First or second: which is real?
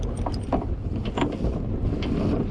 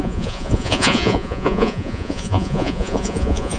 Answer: first